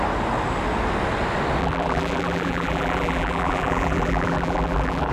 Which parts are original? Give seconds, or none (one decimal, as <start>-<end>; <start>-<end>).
0.0-1.6